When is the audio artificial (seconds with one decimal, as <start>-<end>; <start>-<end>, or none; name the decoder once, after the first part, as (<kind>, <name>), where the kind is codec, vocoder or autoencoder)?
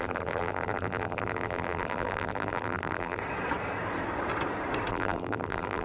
0.0-3.2 (vocoder, BigVGAN v2); 4.9-5.8